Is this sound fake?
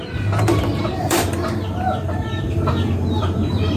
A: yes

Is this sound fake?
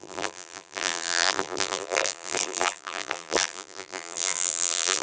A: yes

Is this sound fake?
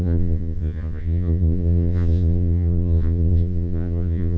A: yes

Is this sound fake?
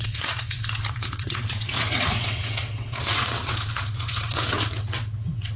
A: yes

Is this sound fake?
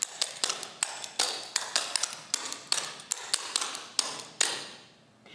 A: no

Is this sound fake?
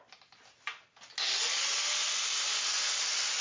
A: no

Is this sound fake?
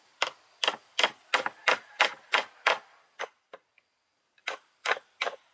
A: yes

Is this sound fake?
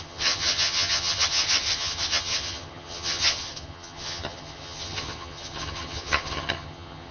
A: yes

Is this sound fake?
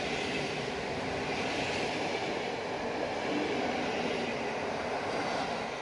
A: no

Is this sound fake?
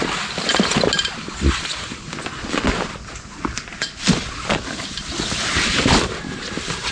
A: no